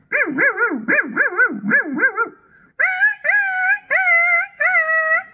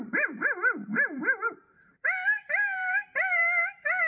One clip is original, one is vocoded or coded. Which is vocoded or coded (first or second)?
second